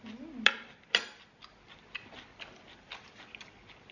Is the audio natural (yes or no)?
yes